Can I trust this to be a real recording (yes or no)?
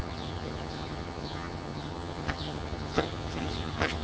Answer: no